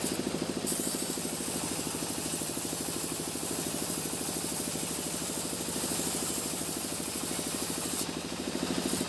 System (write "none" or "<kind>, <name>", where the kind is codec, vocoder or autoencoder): none